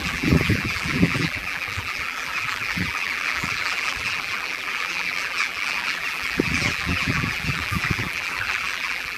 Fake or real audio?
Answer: fake